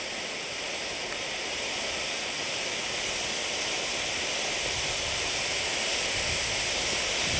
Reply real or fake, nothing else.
real